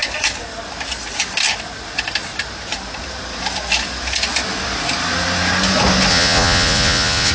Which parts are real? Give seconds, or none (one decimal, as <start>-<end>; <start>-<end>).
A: 0.0-6.1